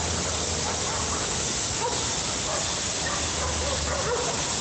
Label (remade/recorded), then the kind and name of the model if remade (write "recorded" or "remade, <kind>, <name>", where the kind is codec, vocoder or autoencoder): recorded